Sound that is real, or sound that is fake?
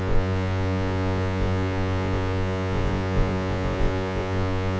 fake